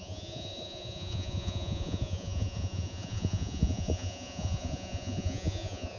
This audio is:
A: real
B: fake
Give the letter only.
B